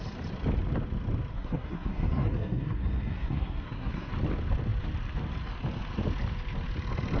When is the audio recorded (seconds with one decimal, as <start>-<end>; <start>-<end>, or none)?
0.0-1.3; 4.1-7.2